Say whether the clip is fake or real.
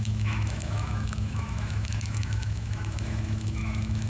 fake